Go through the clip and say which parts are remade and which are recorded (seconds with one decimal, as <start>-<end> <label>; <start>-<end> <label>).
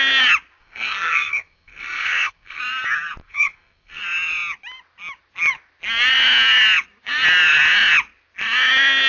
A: 0.0-0.6 recorded; 0.6-2.6 remade; 2.6-3.2 recorded; 3.2-4.0 remade; 4.0-9.1 recorded